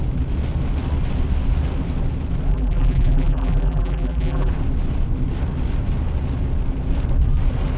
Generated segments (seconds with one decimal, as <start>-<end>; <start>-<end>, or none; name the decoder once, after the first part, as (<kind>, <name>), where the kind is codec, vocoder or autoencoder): 2.5-4.5 (vocoder, BigVGAN v2)